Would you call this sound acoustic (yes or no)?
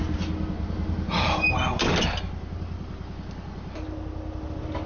yes